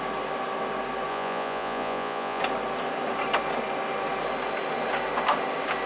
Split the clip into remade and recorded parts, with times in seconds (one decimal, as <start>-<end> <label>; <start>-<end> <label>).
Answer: 0.0-1.1 recorded; 1.1-2.4 remade; 2.4-5.9 recorded